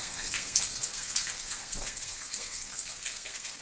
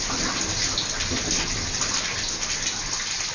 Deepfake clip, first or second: first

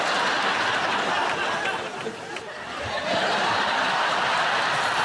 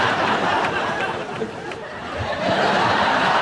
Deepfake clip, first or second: second